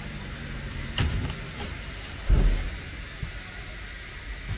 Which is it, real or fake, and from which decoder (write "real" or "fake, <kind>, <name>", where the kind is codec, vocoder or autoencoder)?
real